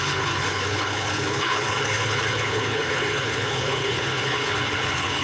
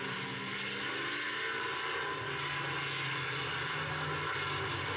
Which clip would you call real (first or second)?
second